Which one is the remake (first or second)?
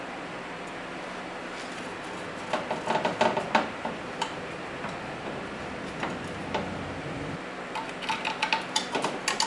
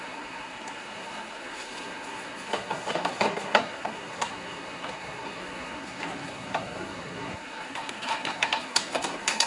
second